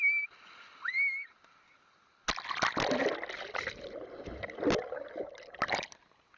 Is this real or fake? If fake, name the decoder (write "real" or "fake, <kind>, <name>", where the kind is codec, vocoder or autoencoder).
real